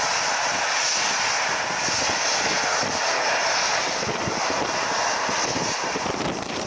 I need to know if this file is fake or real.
real